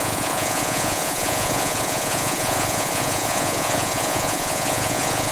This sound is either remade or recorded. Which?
remade